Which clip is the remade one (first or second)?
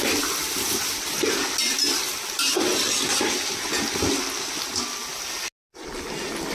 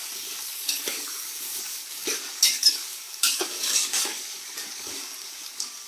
second